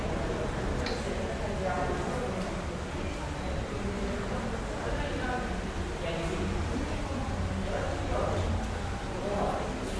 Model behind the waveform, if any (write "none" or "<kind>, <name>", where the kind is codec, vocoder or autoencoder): none